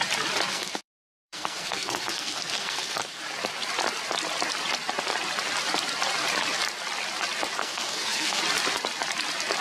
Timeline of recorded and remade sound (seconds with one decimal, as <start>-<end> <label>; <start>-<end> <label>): 0.0-0.5 recorded; 0.5-3.2 remade; 3.2-7.6 recorded; 7.6-8.4 remade; 8.4-9.6 recorded

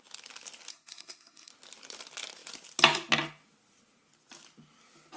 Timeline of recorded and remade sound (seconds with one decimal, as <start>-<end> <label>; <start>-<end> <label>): 0.0-0.7 recorded; 0.7-1.5 remade; 1.5-5.2 recorded

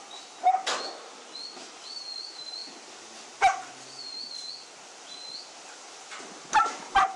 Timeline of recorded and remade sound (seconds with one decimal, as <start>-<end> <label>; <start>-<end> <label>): 0.0-7.2 recorded

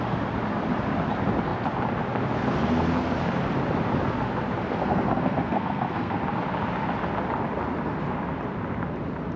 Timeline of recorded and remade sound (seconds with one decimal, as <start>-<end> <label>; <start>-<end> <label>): 0.0-4.8 recorded; 4.8-6.2 remade; 6.2-9.4 recorded

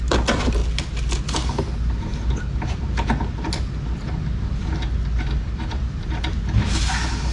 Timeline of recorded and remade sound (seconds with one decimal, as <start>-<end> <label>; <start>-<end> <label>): 0.0-7.3 recorded

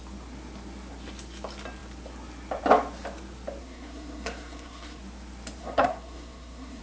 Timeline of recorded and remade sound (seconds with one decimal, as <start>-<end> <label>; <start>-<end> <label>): 0.0-3.6 recorded; 3.6-5.0 remade; 5.0-5.6 recorded; 5.6-6.8 remade

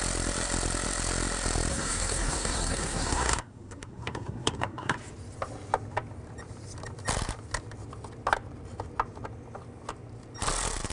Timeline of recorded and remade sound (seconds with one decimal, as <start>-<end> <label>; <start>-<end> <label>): 0.0-1.7 recorded; 1.7-5.0 remade; 5.0-10.9 recorded